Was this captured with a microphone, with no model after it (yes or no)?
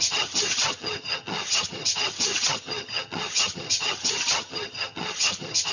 no